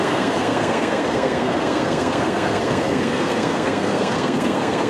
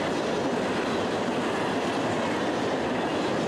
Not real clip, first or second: first